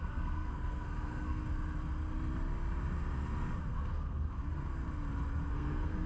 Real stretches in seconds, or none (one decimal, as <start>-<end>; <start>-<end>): 1.4-3.6; 4.7-5.5